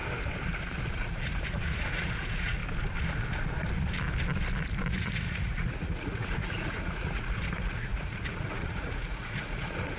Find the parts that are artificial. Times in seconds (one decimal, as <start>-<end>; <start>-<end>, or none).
0.9-2.6; 4.9-10.0

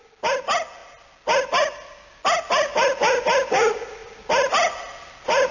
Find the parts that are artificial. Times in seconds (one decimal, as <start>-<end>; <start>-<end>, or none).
none

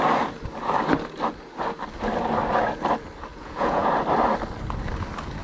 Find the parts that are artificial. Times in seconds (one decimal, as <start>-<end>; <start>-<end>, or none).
3.3-3.9

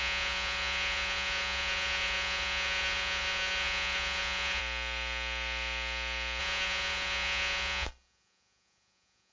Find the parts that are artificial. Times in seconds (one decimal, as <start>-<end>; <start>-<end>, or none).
0.0-4.6; 6.4-9.3

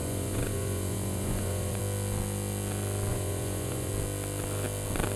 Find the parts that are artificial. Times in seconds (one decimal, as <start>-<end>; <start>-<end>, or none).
0.0-1.8; 3.1-3.9

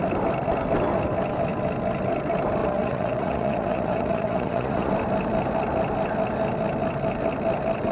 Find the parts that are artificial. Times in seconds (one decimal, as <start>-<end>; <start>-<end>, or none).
2.6-4.9

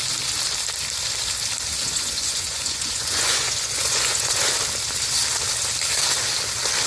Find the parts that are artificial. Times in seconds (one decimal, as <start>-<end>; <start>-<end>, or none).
1.8-4.4